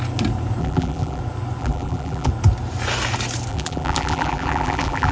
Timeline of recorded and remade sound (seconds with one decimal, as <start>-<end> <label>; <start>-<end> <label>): 0.0-0.6 recorded; 0.6-1.2 remade; 1.2-1.6 recorded; 1.6-2.3 remade; 2.3-3.5 recorded; 3.5-5.1 remade